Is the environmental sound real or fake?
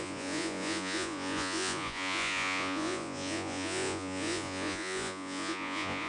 fake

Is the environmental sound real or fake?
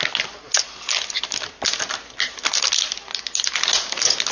real